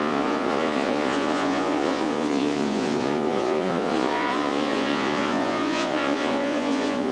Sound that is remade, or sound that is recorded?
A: remade